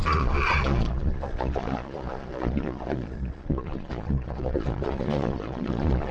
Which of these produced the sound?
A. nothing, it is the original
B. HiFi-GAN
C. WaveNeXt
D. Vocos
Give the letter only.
D